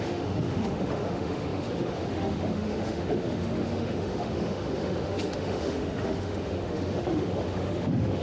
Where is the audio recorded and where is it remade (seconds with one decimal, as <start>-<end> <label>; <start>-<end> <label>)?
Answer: 0.0-8.2 remade